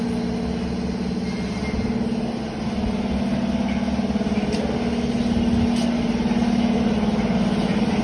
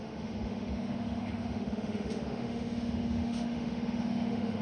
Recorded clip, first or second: first